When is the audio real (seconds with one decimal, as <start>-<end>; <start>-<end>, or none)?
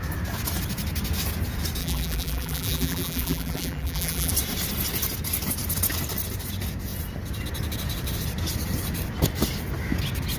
0.0-1.8; 4.3-10.4